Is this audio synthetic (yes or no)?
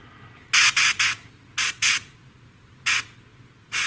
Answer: no